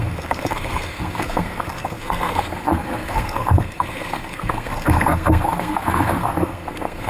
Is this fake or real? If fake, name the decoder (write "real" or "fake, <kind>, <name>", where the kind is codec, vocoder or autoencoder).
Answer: fake, codec, SNAC